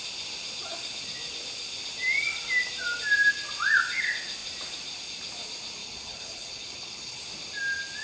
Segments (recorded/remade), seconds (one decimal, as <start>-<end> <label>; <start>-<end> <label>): 0.0-5.8 recorded; 5.8-7.2 remade; 7.2-8.0 recorded